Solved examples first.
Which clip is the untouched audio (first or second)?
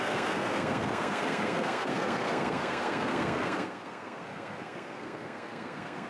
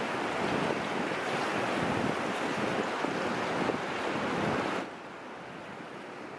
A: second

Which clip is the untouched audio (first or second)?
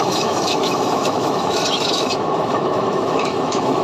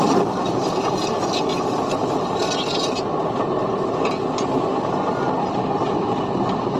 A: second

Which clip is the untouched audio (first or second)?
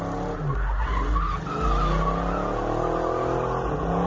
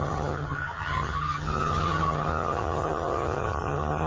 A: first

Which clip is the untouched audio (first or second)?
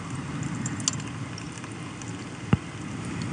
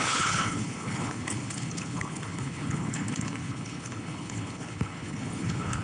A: first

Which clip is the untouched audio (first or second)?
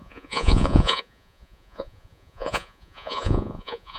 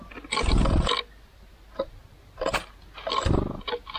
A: second